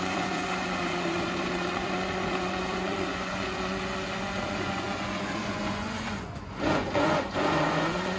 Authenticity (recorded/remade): remade